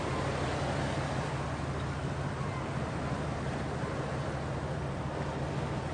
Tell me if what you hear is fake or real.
real